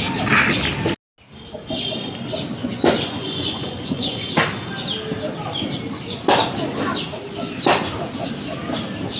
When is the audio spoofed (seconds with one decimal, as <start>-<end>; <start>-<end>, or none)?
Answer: 2.6-4.3